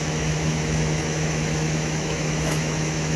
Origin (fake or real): fake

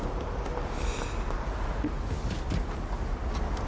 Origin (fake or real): real